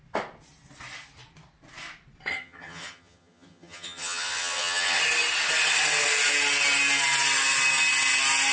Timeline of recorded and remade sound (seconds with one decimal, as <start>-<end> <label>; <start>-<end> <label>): 0.0-2.3 recorded; 2.3-5.0 remade; 5.0-8.5 recorded